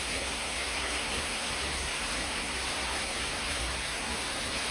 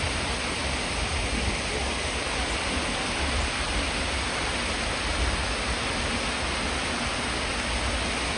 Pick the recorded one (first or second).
second